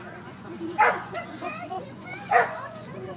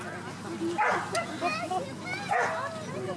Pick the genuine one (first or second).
second